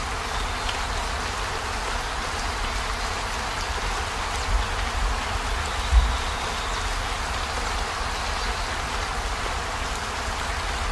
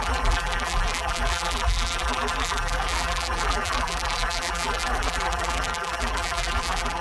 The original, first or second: first